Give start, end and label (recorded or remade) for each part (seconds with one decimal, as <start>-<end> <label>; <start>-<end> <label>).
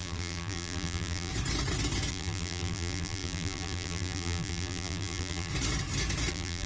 0.0-1.3 remade; 1.3-2.1 recorded; 2.1-5.5 remade; 5.5-6.3 recorded; 6.3-6.7 remade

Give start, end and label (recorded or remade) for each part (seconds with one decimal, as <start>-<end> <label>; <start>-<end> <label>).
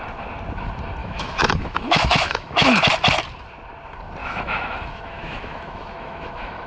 0.0-1.0 recorded; 1.0-2.8 remade; 2.8-4.2 recorded; 4.2-6.7 remade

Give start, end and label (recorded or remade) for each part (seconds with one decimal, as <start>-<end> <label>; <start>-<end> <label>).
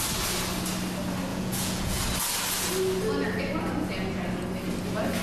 0.0-1.3 recorded; 1.3-2.0 remade; 2.0-5.2 recorded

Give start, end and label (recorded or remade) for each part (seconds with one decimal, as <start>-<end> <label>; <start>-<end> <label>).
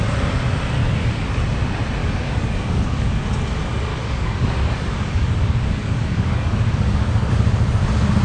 0.0-0.8 recorded; 0.8-1.4 remade; 1.4-2.0 recorded; 2.0-3.2 remade; 3.2-3.9 recorded; 3.9-7.3 remade; 7.3-8.2 recorded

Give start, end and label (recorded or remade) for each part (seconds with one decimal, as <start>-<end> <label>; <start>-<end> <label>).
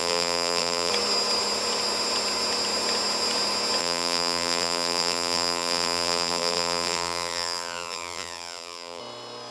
0.0-0.9 remade; 0.9-3.8 recorded; 3.8-9.0 remade; 9.0-9.5 recorded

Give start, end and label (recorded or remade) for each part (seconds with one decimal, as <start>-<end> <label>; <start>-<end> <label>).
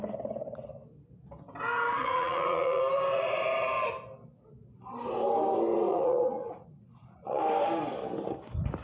0.0-2.0 recorded; 2.0-2.8 remade; 2.8-5.9 recorded; 5.9-7.4 remade; 7.4-8.8 recorded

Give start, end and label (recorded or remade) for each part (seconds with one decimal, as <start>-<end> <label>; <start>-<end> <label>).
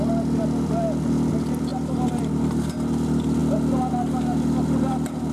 0.0-5.3 recorded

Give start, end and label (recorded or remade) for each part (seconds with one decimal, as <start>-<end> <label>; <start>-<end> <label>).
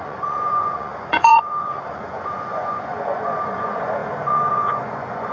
0.0-5.3 remade